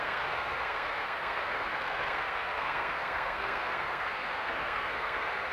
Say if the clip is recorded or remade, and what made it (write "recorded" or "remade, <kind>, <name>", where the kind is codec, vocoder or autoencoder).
remade, codec, SNAC